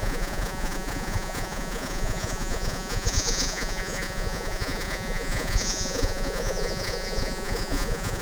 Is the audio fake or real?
fake